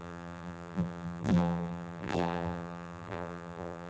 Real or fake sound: fake